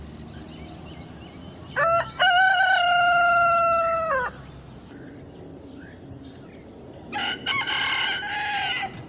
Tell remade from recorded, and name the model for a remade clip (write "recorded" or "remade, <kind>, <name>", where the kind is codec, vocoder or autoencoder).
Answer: recorded